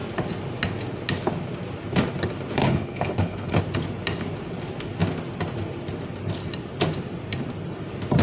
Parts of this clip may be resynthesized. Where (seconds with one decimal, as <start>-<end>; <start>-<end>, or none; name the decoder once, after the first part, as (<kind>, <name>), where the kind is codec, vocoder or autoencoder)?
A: 2.6-3.6 (codec, HILCodec)